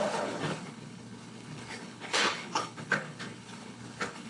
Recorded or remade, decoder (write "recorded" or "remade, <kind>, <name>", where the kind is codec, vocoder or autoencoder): remade, codec, HILCodec